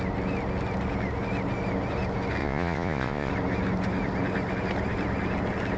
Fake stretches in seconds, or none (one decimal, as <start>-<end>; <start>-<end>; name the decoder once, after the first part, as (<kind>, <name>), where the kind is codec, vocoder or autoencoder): 2.4-3.3 (vocoder, Vocos)